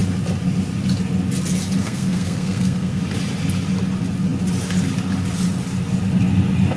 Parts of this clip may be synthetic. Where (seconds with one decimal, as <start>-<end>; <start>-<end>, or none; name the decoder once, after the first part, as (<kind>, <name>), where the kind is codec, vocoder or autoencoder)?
1.8-3.0 (codec, SNAC)